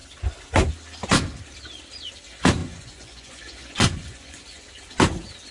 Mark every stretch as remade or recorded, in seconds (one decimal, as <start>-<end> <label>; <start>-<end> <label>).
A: 0.0-2.6 recorded; 2.6-4.7 remade; 4.7-5.5 recorded